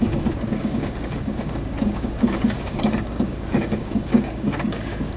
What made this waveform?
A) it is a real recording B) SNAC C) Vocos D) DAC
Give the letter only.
D